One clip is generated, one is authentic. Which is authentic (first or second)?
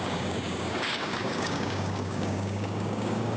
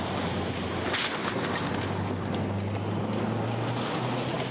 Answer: second